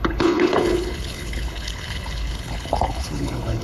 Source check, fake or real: fake